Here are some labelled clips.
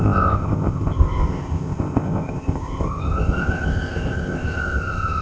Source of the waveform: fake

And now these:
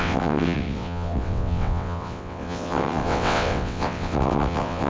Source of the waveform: fake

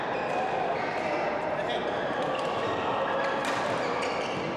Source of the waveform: real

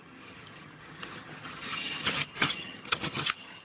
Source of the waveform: fake